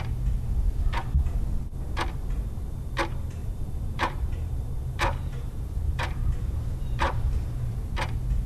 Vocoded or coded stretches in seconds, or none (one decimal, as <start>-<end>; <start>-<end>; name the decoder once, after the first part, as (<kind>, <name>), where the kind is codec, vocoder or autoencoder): 3.4-7.7 (vocoder, BigVGAN v2)